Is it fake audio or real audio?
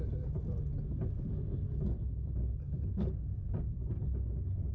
real